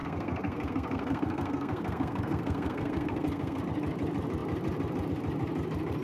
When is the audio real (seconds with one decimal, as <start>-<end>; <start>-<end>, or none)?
3.6-6.0